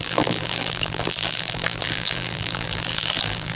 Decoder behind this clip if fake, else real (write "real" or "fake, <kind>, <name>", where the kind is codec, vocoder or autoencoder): fake, vocoder, BigVGAN v2